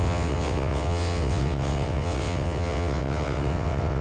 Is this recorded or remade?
remade